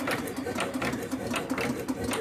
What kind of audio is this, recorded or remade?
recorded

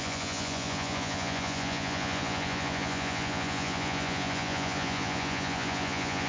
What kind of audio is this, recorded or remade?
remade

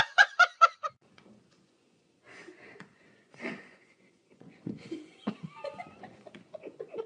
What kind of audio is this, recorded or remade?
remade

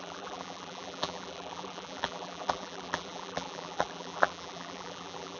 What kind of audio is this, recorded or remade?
remade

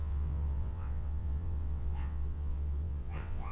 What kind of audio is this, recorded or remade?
remade